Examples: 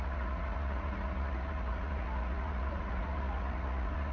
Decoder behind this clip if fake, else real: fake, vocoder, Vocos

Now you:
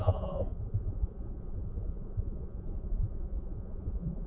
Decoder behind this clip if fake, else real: fake, vocoder, Vocos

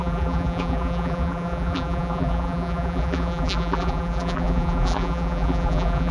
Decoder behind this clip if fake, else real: fake, vocoder, BigVGAN v2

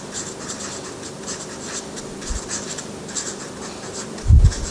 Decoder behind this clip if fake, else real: real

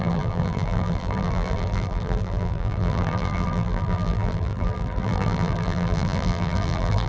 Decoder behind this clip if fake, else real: fake, vocoder, BigVGAN v2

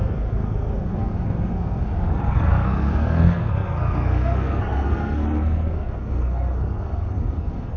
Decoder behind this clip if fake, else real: fake, codec, SNAC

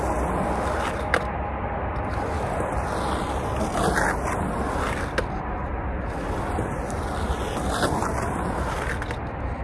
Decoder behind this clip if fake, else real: real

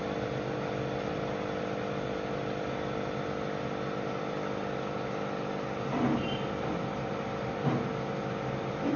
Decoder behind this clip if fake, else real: real